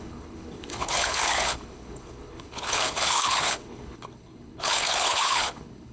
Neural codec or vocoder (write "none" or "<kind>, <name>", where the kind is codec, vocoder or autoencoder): codec, HILCodec